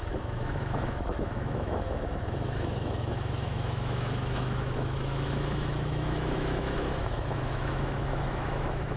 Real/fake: fake